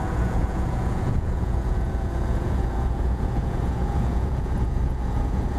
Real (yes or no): no